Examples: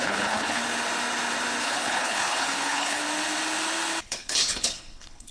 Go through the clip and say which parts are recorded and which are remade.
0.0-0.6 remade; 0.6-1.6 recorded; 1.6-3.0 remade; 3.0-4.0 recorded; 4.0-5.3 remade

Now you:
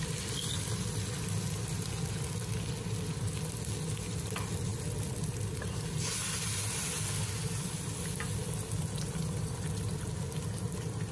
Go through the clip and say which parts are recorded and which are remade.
0.0-11.1 recorded

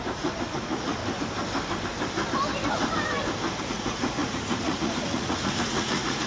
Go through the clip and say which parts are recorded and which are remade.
0.0-1.0 remade; 1.0-3.6 recorded; 3.6-6.3 remade

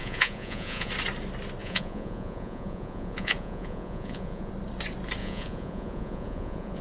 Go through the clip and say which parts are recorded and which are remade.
0.0-0.9 remade; 0.9-1.6 recorded; 1.6-4.5 remade; 4.5-5.2 recorded; 5.2-6.8 remade

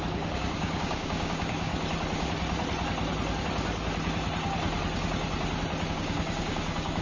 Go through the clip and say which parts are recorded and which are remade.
0.0-1.7 remade; 1.7-5.9 recorded; 5.9-7.0 remade

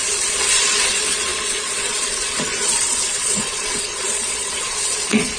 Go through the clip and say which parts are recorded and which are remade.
0.0-5.4 remade